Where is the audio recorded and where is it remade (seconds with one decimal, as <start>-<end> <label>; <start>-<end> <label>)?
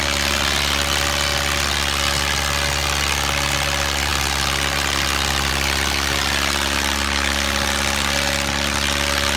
0.0-9.4 recorded